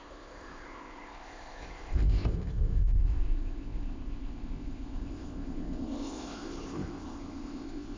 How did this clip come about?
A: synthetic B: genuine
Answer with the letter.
A